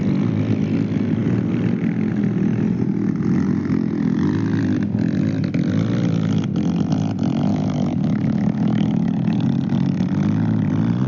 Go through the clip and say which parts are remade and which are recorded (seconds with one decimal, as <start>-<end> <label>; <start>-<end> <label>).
0.0-7.5 recorded; 7.5-9.4 remade; 9.4-11.1 recorded